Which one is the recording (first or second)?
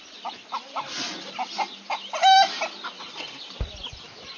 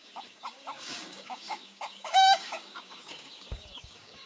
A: first